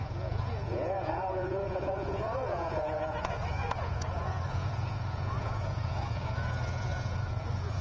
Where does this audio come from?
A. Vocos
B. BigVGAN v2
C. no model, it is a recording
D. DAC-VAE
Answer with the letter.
A